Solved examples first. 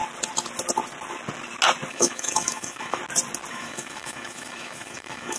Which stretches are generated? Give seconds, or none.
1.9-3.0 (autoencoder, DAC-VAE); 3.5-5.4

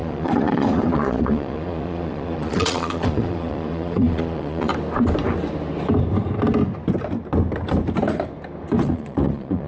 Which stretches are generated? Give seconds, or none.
0.0-4.7 (vocoder, Vocos); 8.8-9.7

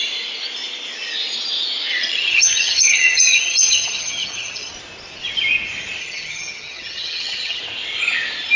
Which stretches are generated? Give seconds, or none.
1.9-4.7 (vocoder, HiFi-GAN); 6.0-7.6

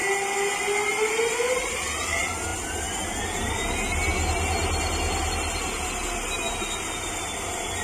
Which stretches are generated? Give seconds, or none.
none

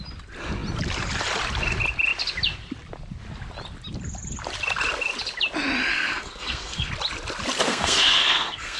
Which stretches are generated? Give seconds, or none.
5.9-6.9 (codec, SNAC); 7.7-8.8

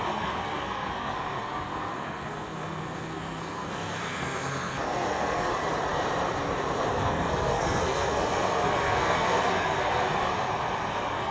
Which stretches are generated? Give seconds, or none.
0.0-5.5 (codec, SNAC); 6.9-10.3; 10.9-11.3